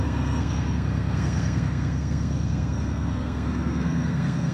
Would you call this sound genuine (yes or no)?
no